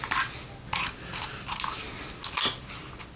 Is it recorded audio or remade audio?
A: recorded